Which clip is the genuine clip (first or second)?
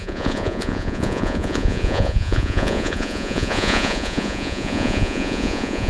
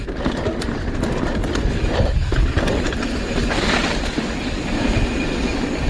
second